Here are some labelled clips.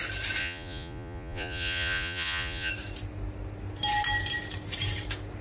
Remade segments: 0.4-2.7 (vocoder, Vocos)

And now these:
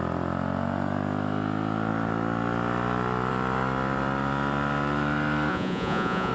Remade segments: 5.5-6.3 (vocoder, Vocos)

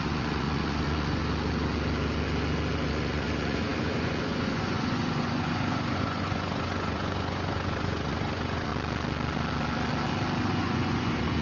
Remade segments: 0.0-1.2 (vocoder, Vocos); 2.9-8.7; 10.5-11.4

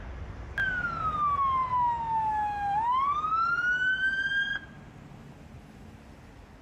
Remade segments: none

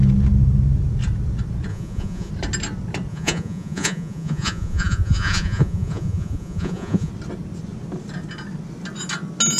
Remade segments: 1.7-2.3 (vocoder, Vocos); 3.1-7.1

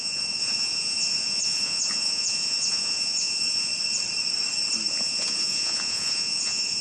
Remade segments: 0.0-3.7 (vocoder, Vocos); 4.9-6.8

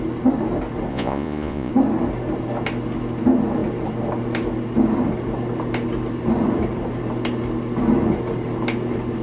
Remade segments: 0.9-1.7 (vocoder, Vocos)